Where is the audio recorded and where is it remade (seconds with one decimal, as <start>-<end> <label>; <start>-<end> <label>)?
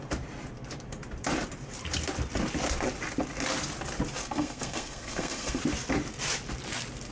0.0-4.2 recorded; 4.2-5.6 remade; 5.6-7.1 recorded